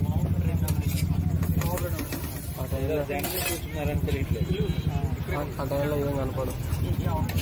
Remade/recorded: recorded